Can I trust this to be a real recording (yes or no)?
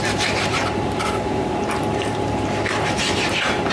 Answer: no